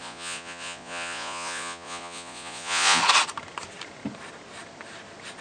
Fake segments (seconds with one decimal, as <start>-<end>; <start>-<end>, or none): 0.0-3.0